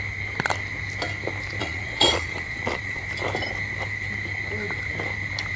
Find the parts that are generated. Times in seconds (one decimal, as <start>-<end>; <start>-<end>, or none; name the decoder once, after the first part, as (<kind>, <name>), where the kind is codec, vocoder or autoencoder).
1.6-3.0 (vocoder, Vocos)